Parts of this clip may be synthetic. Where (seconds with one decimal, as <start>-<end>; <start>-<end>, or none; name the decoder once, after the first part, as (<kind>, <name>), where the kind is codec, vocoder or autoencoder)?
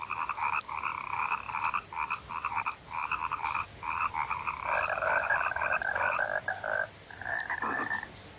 3.0-4.4 (vocoder, BigVGAN v2)